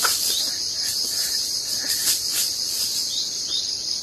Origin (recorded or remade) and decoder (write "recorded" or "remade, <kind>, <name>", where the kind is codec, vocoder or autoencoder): remade, vocoder, BigVGAN v2